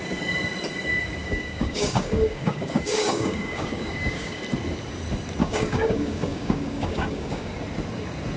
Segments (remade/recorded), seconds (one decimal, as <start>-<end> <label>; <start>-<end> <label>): 0.0-1.2 recorded; 1.2-4.4 remade; 4.4-5.4 recorded; 5.4-7.5 remade; 7.5-8.4 recorded